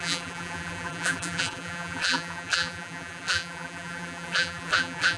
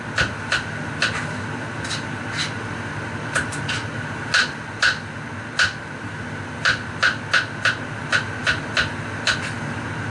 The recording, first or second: second